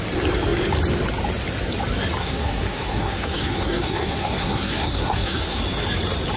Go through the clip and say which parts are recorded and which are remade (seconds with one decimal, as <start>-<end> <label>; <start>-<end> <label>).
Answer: 0.0-2.2 recorded; 2.2-5.6 remade; 5.6-6.4 recorded